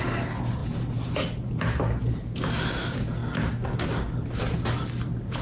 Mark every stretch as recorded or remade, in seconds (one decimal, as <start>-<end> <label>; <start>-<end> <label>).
0.0-5.4 recorded